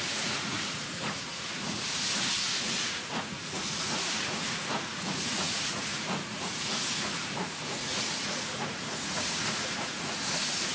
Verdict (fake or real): fake